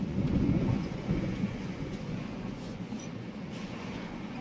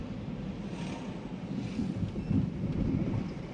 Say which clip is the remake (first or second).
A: first